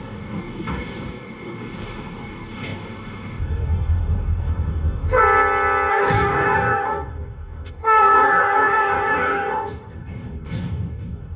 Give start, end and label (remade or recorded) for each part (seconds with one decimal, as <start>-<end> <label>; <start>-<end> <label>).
0.0-5.2 remade; 5.2-5.9 recorded; 5.9-11.4 remade